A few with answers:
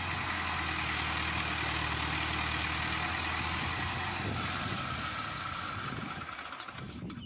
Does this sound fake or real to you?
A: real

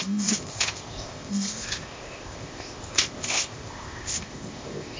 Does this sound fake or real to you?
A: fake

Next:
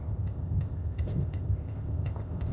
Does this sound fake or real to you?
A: fake